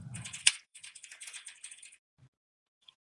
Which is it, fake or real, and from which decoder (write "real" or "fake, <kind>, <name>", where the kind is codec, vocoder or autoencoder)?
fake, vocoder, Vocos